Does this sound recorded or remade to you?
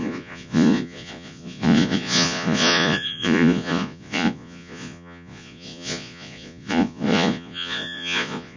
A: remade